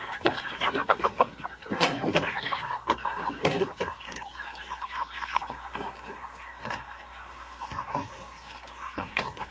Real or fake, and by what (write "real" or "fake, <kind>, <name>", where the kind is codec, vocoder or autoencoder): fake, codec, SNAC